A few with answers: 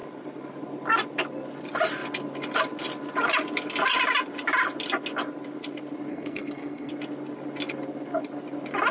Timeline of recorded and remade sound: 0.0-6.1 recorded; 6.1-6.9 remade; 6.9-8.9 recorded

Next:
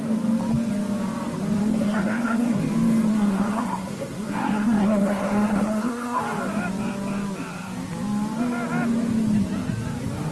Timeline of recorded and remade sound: 0.0-1.6 recorded; 1.6-2.6 remade; 2.6-3.1 recorded; 3.1-6.2 remade; 6.2-10.3 recorded

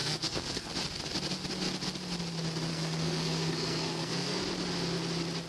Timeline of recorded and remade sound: 0.0-0.7 remade; 0.7-2.7 recorded; 2.7-4.4 remade; 4.4-5.5 recorded

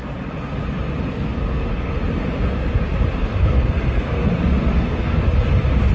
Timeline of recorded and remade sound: 0.0-1.1 recorded; 1.1-1.9 remade; 1.9-3.2 recorded; 3.2-4.3 remade; 4.3-4.7 recorded; 4.7-5.2 remade; 5.2-5.9 recorded

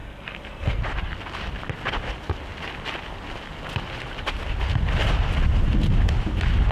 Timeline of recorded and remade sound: 0.0-0.8 remade; 0.8-6.7 recorded

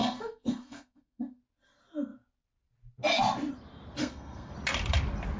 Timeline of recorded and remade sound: 0.0-1.4 remade; 1.4-4.0 recorded; 4.0-4.5 remade; 4.5-5.4 recorded

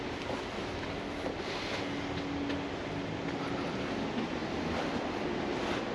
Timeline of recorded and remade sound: 0.0-5.9 recorded